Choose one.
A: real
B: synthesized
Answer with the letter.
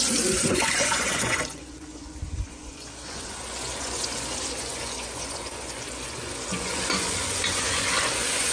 B